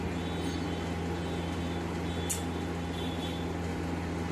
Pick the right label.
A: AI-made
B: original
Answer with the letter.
B